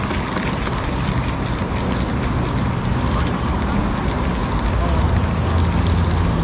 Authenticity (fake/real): real